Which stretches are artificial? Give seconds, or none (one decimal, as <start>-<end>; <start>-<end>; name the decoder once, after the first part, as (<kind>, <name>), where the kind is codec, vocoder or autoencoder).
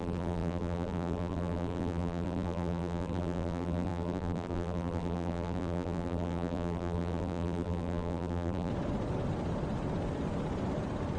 0.0-8.7 (vocoder, BigVGAN v2)